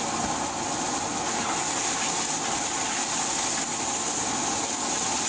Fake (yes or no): no